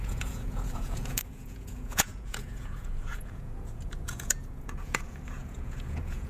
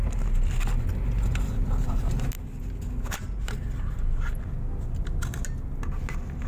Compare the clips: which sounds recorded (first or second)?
second